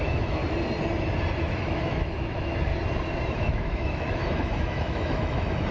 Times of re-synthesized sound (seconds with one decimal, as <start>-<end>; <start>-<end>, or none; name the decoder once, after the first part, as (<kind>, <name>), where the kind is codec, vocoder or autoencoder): 0.0-0.4 (autoencoder, DAC-VAE); 1.4-2.7; 3.3-5.7